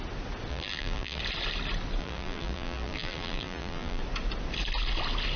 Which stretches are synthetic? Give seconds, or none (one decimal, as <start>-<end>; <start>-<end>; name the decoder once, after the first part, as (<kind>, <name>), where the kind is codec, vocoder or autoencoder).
0.5-1.2 (vocoder, BigVGAN v2); 2.0-4.0